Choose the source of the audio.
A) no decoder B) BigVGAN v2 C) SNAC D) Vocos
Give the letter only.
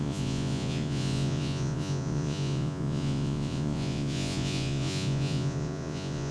D